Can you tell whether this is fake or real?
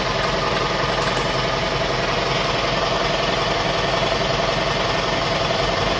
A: real